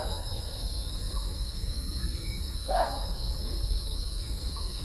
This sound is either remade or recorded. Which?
remade